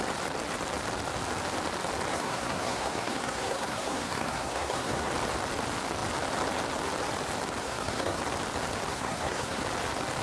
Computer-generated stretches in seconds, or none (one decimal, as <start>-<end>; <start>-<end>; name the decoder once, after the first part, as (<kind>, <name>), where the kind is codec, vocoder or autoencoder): 2.1-5.1 (codec, SNAC); 7.6-8.2; 8.9-9.6